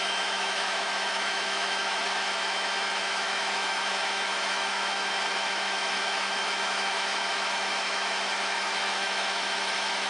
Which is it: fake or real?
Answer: fake